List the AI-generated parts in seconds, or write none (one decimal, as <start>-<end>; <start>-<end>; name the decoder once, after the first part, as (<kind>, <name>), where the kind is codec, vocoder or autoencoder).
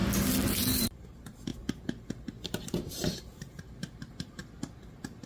0.6-4.4 (vocoder, BigVGAN v2)